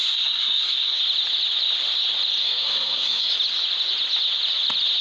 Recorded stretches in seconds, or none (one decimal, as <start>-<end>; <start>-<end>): 1.0-2.4; 3.3-5.0